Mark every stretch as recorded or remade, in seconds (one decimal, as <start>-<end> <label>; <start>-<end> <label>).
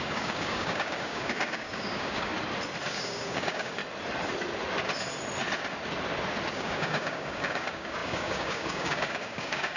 0.0-2.3 remade; 2.3-2.9 recorded; 2.9-3.8 remade; 3.8-6.5 recorded; 6.5-9.8 remade